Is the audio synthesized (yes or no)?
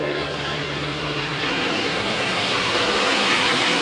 yes